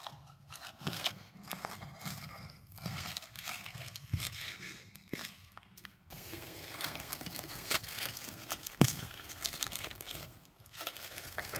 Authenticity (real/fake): fake